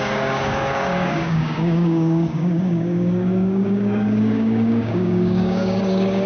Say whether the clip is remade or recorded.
remade